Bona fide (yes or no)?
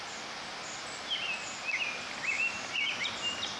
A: yes